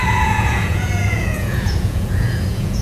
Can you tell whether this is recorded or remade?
remade